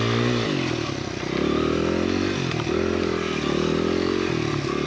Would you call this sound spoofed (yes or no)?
no